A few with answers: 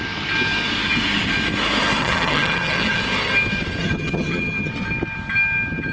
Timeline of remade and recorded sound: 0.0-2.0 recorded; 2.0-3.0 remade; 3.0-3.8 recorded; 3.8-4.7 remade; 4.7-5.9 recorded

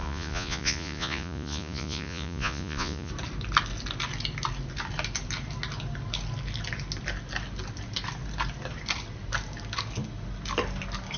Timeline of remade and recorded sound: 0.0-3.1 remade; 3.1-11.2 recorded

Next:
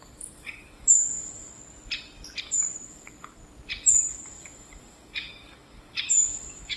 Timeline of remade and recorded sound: 0.0-1.6 remade; 1.6-2.4 recorded; 2.4-3.4 remade; 3.4-4.1 recorded; 4.1-6.8 remade